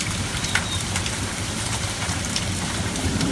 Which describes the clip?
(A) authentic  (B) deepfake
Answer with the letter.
B